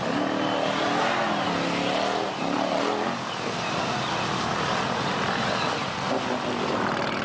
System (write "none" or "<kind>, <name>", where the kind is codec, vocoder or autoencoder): none